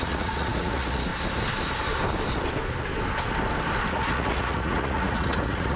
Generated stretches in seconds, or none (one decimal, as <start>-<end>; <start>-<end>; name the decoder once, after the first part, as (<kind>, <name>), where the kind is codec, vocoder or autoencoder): 0.0-1.1 (vocoder, Vocos); 3.9-5.8